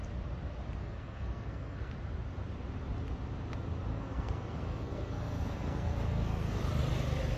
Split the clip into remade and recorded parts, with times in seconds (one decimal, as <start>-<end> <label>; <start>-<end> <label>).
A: 0.0-0.8 recorded; 0.8-1.9 remade; 1.9-3.9 recorded; 3.9-6.6 remade; 6.6-7.4 recorded